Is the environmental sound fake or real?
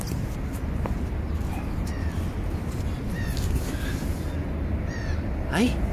real